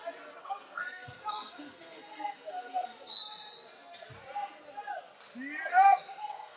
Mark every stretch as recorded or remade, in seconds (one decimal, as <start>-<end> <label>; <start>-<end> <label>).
0.0-0.4 recorded; 0.4-3.2 remade; 3.2-5.7 recorded; 5.7-6.6 remade